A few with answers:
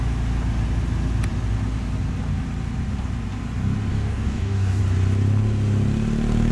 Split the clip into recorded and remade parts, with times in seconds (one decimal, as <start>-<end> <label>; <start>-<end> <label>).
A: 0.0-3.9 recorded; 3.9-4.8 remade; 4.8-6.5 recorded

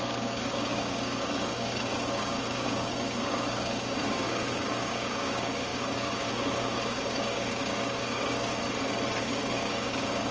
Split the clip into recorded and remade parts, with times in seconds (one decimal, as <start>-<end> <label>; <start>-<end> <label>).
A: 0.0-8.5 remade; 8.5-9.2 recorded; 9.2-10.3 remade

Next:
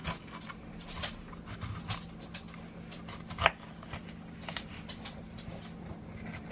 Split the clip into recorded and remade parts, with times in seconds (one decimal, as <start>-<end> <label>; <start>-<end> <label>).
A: 0.0-6.5 recorded

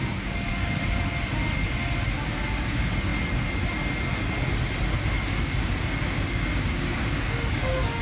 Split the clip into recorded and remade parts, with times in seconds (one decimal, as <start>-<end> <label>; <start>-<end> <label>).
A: 0.0-0.5 remade; 0.5-2.2 recorded; 2.2-3.1 remade; 3.1-5.3 recorded; 5.3-8.0 remade